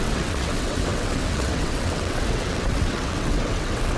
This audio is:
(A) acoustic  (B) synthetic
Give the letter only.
B